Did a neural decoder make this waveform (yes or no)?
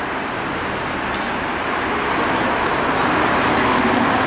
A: no